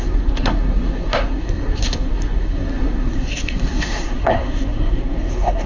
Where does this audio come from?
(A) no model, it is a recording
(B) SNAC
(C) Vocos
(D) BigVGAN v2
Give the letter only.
B